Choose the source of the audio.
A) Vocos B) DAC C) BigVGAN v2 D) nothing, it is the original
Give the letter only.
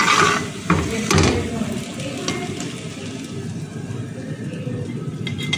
D